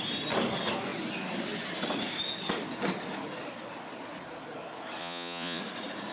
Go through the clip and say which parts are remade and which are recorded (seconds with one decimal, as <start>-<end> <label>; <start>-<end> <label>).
0.0-5.0 recorded; 5.0-5.6 remade; 5.6-6.1 recorded